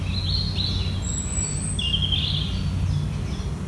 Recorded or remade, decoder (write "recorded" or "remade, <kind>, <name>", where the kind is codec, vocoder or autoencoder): recorded